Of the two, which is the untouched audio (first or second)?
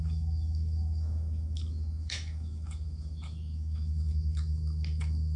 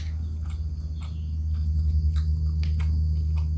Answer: second